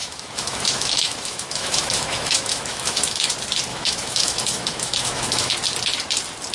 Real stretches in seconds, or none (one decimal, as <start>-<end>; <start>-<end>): 3.3-3.7; 5.5-6.5